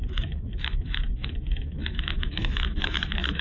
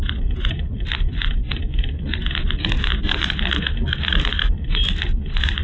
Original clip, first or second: second